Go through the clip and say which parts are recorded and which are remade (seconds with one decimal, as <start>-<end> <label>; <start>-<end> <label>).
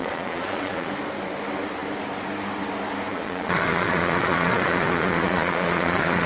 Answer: 0.0-0.9 remade; 0.9-3.1 recorded; 3.1-6.3 remade